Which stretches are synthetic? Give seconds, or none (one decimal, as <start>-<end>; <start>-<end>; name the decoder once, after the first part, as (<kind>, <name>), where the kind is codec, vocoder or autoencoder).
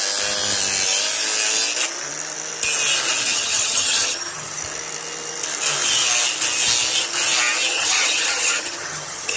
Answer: 3.3-4.6 (vocoder, HiFi-GAN); 7.7-9.4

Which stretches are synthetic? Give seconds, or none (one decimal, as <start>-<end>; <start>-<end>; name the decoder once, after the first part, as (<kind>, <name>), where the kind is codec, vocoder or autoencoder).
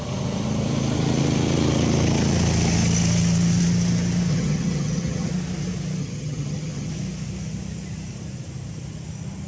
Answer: 4.3-5.3 (vocoder, HiFi-GAN); 6.0-6.9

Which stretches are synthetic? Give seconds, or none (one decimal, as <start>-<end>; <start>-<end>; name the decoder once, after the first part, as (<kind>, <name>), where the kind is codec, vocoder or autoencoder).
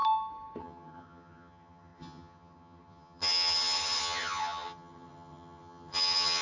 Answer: 0.6-6.4 (vocoder, HiFi-GAN)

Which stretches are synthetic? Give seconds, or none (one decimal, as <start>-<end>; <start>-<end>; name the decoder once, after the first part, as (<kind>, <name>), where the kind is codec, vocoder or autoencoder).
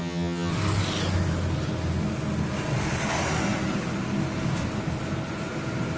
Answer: 0.0-0.5 (vocoder, HiFi-GAN)